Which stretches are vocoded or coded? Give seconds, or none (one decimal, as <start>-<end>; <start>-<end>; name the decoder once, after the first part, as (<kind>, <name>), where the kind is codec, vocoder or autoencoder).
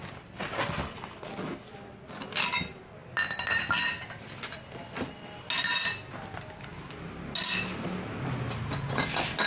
none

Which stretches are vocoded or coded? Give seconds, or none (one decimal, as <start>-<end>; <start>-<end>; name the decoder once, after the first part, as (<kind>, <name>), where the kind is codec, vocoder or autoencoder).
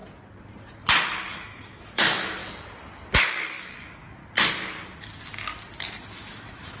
1.3-2.4 (autoencoder, DAC-VAE); 3.4-4.2; 6.1-6.8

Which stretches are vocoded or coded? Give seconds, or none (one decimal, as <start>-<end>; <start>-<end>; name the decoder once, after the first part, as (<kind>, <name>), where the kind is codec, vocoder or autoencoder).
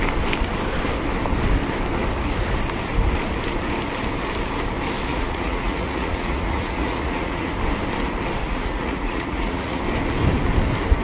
5.1-7.5 (vocoder, Vocos); 8.4-9.8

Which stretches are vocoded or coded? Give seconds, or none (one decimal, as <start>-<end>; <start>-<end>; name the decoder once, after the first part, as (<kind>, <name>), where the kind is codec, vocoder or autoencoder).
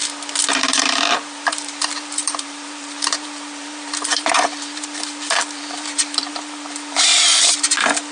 0.6-7.1 (vocoder, BigVGAN v2)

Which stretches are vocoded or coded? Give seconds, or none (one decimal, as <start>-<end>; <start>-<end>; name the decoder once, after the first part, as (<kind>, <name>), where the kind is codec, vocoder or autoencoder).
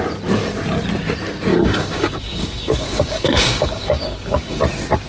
1.5-4.6 (codec, DAC)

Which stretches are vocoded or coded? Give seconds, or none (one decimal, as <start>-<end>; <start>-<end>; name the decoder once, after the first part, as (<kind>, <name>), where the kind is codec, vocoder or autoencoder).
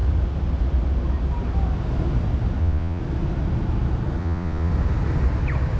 2.6-3.0 (vocoder, Vocos); 4.2-4.7